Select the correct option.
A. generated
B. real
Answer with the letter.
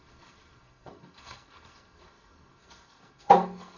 A